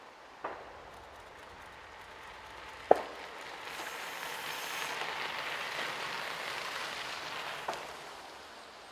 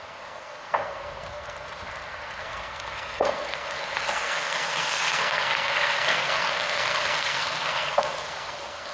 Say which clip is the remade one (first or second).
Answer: second